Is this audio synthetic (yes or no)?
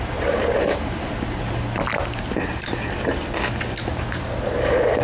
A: no